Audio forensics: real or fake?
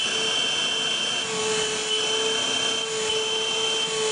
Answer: real